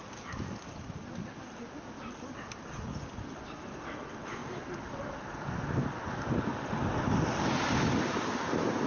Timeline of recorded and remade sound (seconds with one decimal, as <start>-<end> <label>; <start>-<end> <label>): 0.0-4.4 recorded; 4.4-8.9 remade